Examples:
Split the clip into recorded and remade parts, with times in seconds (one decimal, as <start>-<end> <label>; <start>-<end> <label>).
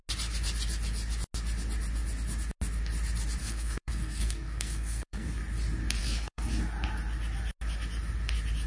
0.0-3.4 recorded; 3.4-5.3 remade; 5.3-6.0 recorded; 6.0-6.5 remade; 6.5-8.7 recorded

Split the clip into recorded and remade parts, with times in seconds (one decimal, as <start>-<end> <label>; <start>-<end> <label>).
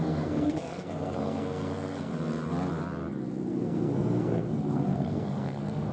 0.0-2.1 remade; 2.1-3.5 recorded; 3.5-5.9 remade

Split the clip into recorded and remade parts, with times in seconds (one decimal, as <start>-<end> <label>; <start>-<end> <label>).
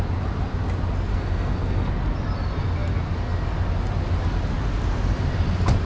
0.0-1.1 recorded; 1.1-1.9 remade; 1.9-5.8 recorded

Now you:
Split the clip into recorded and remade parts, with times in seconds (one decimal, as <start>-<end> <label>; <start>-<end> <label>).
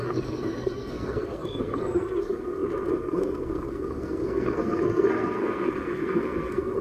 0.0-6.8 remade